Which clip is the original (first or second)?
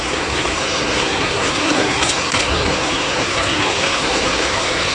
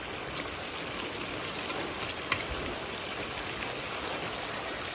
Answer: second